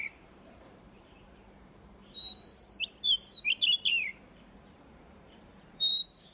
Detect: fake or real fake